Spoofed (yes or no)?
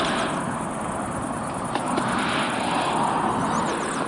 no